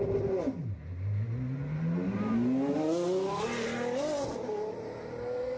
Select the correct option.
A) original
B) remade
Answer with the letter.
A